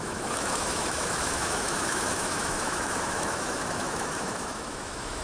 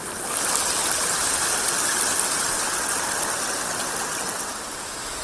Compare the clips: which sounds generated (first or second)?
first